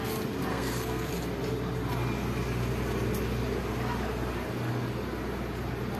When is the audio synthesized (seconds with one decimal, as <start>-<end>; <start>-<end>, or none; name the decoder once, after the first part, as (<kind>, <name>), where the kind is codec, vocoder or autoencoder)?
0.5-1.1 (codec, SNAC)